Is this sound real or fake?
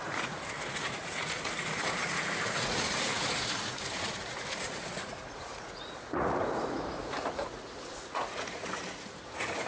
fake